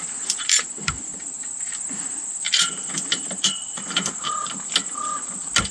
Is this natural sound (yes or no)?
no